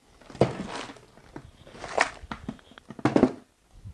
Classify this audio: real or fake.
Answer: real